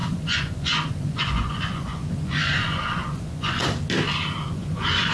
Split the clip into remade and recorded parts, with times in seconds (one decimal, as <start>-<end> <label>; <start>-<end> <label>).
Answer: 0.0-3.6 remade; 3.6-4.4 recorded; 4.4-5.1 remade